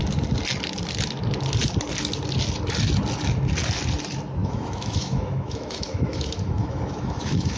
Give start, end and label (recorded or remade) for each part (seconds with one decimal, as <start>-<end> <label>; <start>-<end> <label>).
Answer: 0.0-4.4 recorded; 4.4-7.6 remade